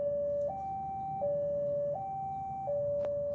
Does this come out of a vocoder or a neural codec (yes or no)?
no